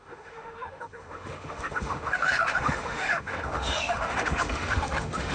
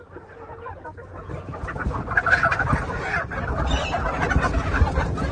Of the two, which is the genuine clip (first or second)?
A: second